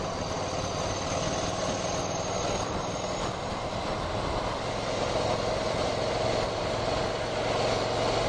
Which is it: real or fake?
real